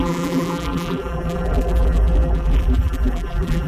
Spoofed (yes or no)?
yes